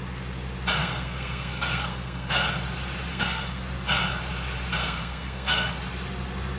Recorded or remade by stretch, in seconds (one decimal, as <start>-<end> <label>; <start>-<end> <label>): 0.0-0.8 recorded; 0.8-2.5 remade; 2.5-3.1 recorded; 3.1-3.6 remade; 3.6-4.8 recorded; 4.8-5.7 remade; 5.7-6.6 recorded